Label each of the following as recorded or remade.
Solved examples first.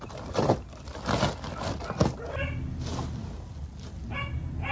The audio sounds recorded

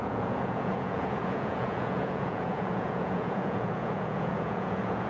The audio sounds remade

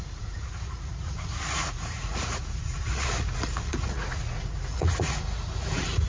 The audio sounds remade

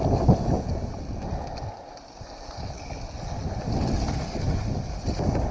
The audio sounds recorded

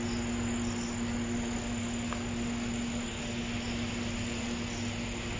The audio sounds recorded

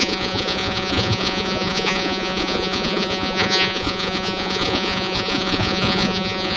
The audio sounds remade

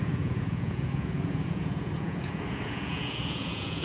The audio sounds remade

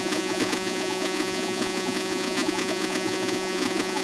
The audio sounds remade